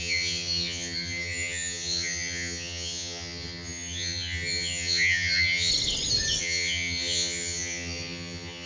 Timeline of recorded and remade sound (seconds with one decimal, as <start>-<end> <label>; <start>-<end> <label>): 0.0-5.7 remade; 5.7-6.4 recorded; 6.4-8.7 remade